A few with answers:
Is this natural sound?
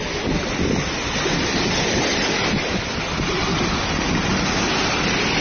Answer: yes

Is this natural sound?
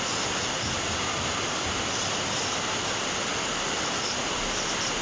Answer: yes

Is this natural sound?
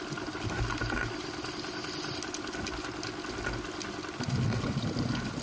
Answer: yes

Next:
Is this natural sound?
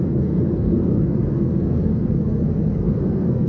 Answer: no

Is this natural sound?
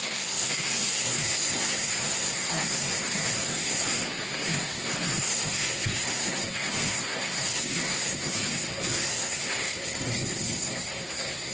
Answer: no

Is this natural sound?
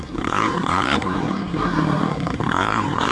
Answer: no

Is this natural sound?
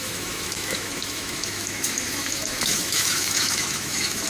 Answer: no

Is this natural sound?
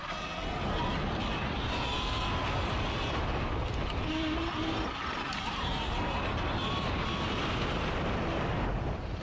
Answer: yes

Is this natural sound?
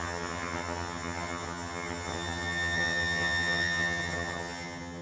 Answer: no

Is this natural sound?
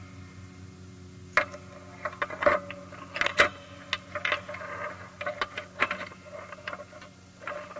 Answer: yes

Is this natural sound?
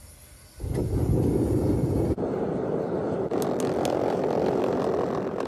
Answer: yes